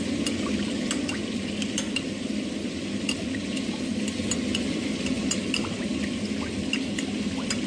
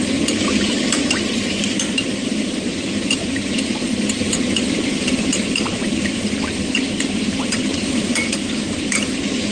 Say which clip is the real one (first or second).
first